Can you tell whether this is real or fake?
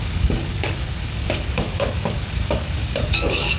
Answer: fake